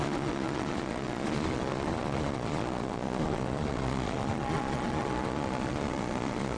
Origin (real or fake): fake